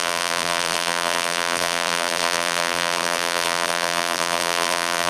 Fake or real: fake